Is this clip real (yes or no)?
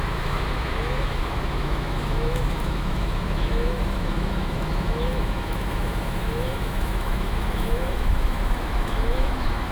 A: no